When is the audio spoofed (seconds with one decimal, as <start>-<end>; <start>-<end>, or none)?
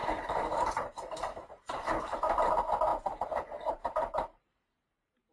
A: 0.0-2.5; 2.9-5.3